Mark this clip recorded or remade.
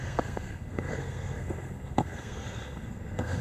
remade